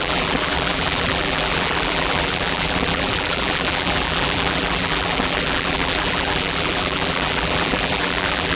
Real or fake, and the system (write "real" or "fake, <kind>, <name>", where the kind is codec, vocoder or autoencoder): fake, vocoder, BigVGAN v2